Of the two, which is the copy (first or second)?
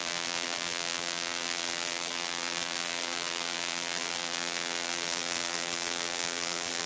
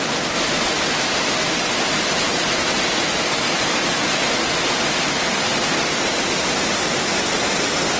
first